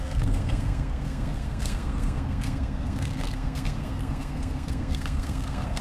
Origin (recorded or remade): remade